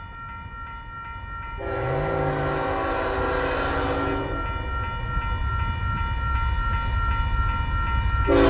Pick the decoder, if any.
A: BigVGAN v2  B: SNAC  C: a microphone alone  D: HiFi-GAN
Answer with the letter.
C